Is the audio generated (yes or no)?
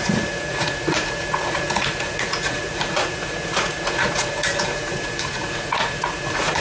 yes